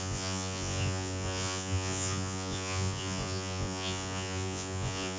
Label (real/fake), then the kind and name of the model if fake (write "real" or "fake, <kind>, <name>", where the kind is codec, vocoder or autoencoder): fake, vocoder, Vocos